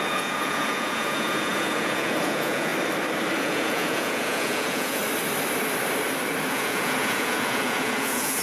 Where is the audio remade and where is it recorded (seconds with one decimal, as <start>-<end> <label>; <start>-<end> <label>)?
0.0-2.7 remade; 2.7-3.4 recorded; 3.4-5.0 remade; 5.0-6.5 recorded; 6.5-8.4 remade

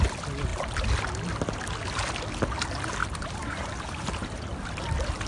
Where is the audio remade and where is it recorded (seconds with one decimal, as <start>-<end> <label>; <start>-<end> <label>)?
0.0-3.0 recorded; 3.0-4.4 remade; 4.4-5.3 recorded

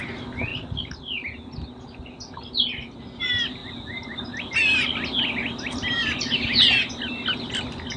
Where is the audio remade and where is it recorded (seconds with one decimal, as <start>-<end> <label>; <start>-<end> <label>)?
0.0-8.0 recorded

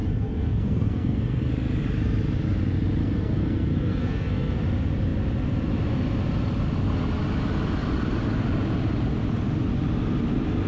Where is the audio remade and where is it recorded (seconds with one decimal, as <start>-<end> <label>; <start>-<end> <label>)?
0.0-1.5 remade; 1.5-3.0 recorded; 3.0-4.6 remade; 4.6-10.7 recorded

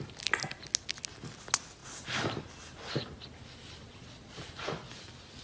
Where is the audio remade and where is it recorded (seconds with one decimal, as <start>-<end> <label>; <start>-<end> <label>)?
0.0-3.8 recorded; 3.8-4.4 remade; 4.4-5.4 recorded

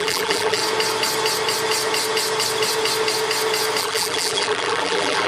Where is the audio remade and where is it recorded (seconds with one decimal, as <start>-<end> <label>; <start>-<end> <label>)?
0.0-0.6 remade; 0.6-3.8 recorded; 3.8-5.3 remade